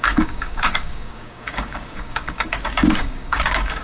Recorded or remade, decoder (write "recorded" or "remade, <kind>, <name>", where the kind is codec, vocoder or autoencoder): remade, codec, DAC